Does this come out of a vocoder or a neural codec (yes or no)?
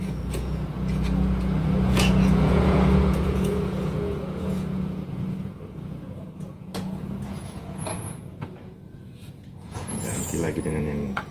yes